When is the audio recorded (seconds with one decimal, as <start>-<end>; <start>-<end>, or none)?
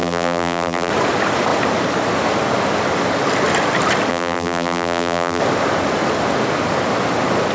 0.9-4.1; 5.4-7.5